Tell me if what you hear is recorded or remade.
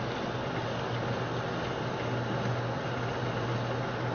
recorded